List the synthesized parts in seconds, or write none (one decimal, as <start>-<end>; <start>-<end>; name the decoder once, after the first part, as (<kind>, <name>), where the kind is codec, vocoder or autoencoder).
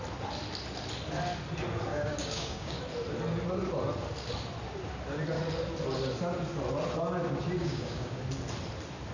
1.9-2.8 (codec, DAC); 7.6-8.2